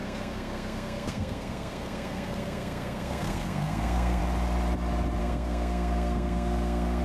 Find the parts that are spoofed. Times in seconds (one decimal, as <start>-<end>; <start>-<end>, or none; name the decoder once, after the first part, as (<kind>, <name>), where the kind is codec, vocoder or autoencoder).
0.0-4.2 (codec, SNAC); 5.2-7.0